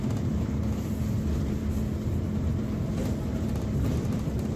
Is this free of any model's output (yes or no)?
yes